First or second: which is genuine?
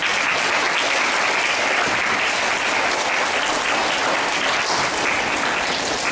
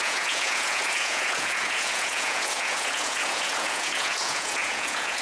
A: first